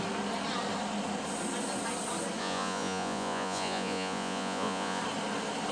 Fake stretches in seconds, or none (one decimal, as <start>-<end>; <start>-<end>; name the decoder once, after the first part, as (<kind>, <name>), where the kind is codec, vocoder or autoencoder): 2.4-5.0 (vocoder, Vocos)